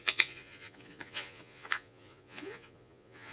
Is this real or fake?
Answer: fake